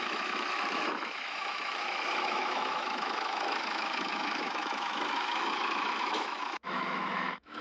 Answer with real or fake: fake